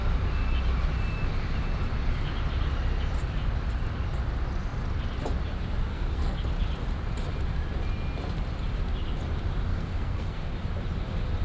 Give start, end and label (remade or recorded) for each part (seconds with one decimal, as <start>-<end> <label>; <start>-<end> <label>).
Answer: 0.0-5.9 recorded; 5.9-6.5 remade; 6.5-9.7 recorded; 9.7-10.5 remade; 10.5-11.4 recorded